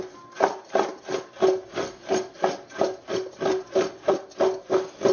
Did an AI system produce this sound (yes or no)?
no